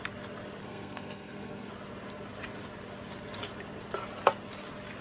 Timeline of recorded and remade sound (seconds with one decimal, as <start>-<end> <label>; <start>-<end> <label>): 0.0-0.6 recorded; 0.6-1.7 remade; 1.7-5.0 recorded